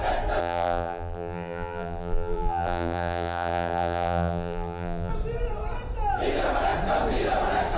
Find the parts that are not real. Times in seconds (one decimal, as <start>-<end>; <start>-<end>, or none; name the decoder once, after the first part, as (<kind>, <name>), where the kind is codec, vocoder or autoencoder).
0.4-5.1 (vocoder, BigVGAN v2)